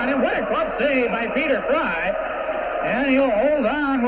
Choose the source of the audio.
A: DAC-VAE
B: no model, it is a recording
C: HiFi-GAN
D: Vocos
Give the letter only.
B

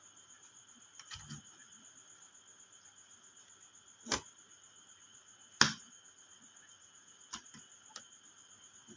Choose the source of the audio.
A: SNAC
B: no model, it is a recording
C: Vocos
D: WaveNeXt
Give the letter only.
B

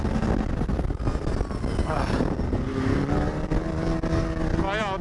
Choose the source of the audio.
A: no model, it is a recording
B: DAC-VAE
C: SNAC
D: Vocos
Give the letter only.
A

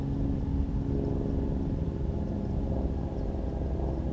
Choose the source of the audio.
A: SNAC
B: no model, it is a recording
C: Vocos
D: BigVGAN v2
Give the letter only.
B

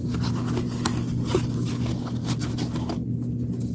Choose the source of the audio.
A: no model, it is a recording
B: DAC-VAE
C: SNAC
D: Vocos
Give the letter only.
A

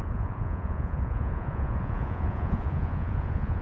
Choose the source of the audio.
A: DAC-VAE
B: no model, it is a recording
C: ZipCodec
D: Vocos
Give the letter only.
D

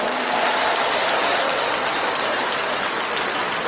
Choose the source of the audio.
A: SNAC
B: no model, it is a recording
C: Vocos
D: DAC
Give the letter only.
B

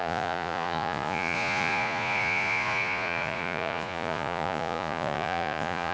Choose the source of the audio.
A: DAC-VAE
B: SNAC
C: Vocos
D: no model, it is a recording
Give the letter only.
C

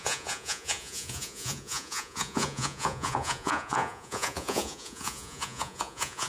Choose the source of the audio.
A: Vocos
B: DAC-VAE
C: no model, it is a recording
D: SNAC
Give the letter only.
A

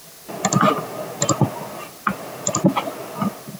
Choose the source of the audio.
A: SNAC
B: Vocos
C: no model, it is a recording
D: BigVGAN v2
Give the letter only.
C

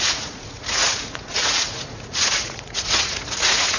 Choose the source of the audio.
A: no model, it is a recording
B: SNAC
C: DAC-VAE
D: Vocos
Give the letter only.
D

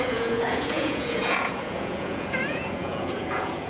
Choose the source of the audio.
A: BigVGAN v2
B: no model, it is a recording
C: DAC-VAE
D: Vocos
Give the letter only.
D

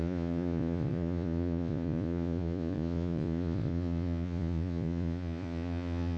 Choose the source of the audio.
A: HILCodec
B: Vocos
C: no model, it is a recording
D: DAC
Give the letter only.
B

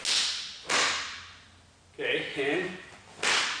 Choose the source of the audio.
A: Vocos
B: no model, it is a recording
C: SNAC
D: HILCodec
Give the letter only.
B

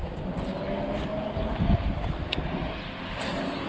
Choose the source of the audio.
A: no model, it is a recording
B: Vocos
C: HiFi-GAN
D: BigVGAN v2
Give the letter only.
A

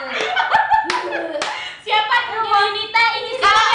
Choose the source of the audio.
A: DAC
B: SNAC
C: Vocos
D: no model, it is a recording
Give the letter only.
D